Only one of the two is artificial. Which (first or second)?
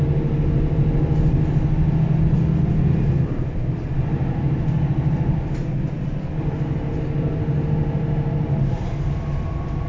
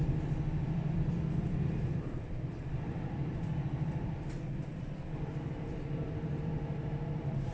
second